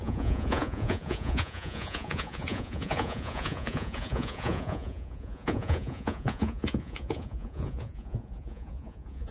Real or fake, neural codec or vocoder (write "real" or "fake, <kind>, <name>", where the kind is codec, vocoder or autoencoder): fake, vocoder, Vocos